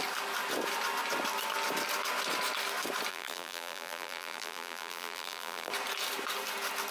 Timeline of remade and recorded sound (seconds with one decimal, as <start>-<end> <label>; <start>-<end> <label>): 0.0-3.1 recorded; 3.1-5.7 remade; 5.7-6.9 recorded